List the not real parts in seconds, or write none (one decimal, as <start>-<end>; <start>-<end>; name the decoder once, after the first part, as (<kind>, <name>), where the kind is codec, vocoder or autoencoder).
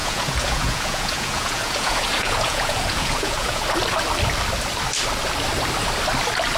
0.0-3.6 (vocoder, Vocos)